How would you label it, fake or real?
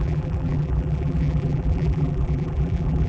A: fake